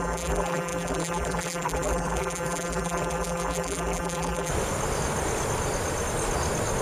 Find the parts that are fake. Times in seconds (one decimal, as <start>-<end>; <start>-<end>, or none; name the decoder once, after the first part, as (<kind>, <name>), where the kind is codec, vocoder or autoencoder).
0.0-4.5 (vocoder, BigVGAN v2)

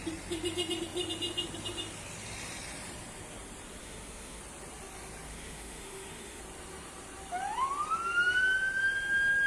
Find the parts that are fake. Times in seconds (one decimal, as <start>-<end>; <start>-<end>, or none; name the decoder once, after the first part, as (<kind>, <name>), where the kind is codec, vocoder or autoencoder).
3.8-4.4 (autoencoder, DAC-VAE); 5.3-6.4

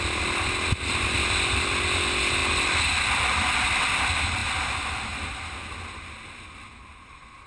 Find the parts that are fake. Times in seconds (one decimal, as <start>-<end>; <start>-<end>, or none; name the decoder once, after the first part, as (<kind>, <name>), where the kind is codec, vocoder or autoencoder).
none

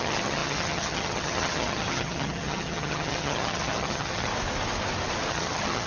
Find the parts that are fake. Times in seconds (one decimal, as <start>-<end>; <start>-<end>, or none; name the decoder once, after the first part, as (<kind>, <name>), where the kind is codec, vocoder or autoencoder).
0.0-4.3 (vocoder, HiFi-GAN); 5.3-5.9

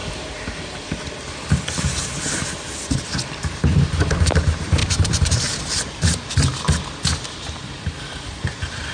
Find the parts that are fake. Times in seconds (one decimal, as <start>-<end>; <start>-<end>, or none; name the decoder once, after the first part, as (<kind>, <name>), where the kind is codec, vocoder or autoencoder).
0.0-0.9 (vocoder, BigVGAN v2); 4.8-5.6